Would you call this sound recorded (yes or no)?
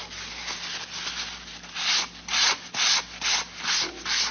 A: yes